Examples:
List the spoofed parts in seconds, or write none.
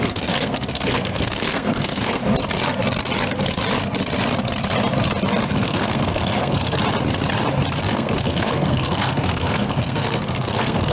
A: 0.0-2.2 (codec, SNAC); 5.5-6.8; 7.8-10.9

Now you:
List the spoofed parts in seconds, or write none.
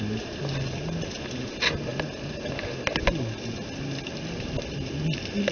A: none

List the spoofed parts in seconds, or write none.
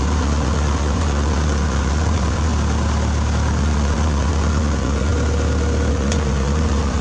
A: 0.0-2.5 (vocoder, Vocos); 3.6-5.1; 5.9-7.0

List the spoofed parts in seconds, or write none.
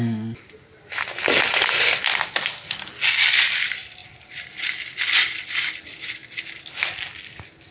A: none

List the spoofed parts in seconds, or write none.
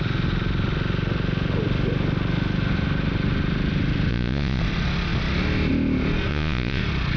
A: 4.1-4.6 (vocoder, Vocos); 6.3-6.8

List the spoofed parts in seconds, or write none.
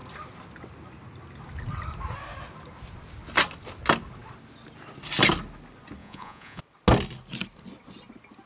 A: 6.0-6.6 (vocoder, Vocos)